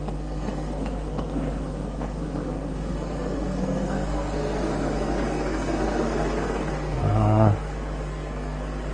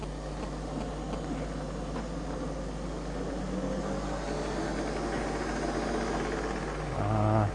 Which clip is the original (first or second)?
second